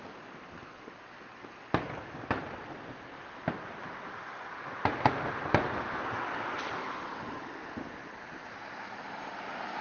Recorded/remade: recorded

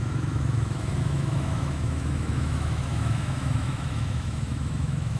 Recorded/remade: remade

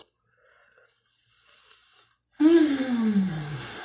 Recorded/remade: recorded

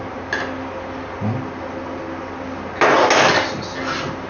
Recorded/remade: recorded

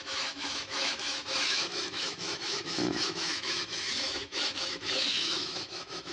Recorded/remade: remade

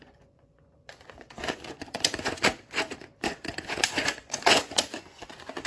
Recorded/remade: remade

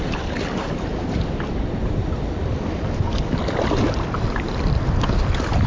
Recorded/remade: recorded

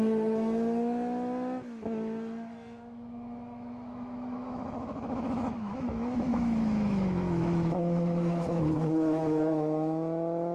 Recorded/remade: remade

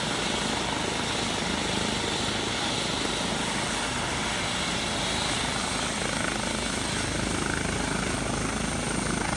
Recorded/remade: recorded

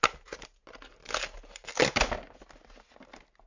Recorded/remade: recorded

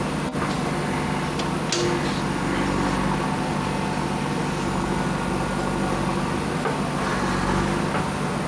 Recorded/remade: recorded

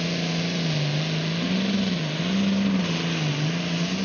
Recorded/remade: recorded